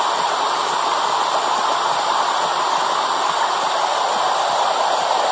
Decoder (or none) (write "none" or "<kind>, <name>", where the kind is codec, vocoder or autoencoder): none